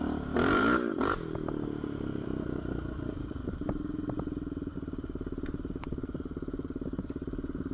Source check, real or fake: fake